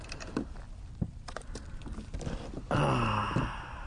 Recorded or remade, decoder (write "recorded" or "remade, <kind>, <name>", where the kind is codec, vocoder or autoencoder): recorded